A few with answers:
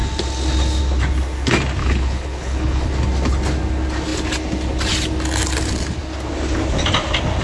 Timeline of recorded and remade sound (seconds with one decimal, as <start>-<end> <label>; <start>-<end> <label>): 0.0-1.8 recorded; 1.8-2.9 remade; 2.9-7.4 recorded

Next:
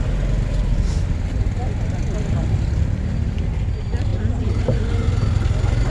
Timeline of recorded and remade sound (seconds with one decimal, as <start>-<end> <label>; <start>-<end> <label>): 0.0-5.9 recorded

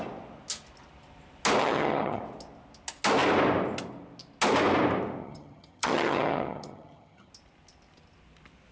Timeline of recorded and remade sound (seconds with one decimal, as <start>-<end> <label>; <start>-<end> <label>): 0.0-1.6 recorded; 1.6-2.2 remade; 2.2-5.2 recorded; 5.2-7.3 remade; 7.3-8.7 recorded

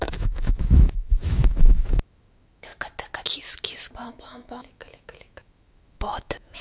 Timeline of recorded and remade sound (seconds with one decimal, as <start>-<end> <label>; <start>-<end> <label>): 0.0-2.7 remade; 2.7-4.1 recorded; 4.1-6.6 remade

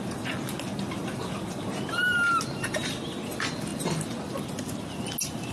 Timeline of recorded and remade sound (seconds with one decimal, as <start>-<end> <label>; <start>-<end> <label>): 0.0-5.5 recorded

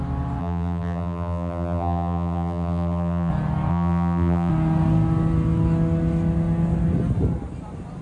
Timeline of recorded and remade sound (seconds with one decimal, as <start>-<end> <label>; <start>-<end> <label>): 0.0-0.4 recorded; 0.4-3.3 remade; 3.3-3.7 recorded; 3.7-4.5 remade; 4.5-8.0 recorded

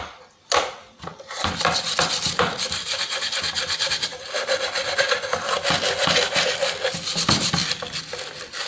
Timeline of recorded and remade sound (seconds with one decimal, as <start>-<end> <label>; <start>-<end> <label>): 0.0-8.7 recorded